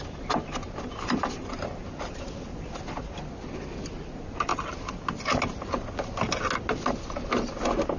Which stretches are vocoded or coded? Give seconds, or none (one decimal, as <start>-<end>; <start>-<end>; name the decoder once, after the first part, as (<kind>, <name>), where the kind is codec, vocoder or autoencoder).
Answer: none